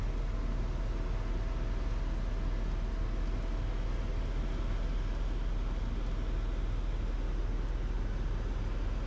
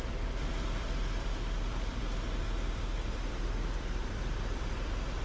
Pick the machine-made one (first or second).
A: second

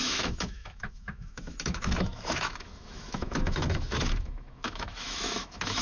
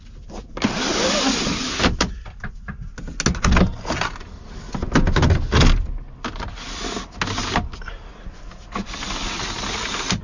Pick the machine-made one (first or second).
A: first